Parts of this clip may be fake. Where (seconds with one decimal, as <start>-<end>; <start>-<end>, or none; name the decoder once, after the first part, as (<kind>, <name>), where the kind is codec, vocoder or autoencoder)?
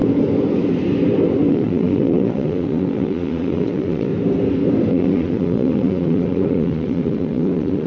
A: 1.5-4.1 (vocoder, Vocos); 4.9-7.9